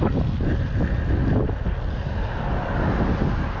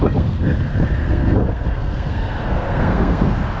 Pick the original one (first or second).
first